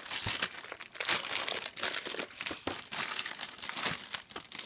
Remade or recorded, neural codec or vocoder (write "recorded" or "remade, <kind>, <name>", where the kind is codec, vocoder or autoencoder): recorded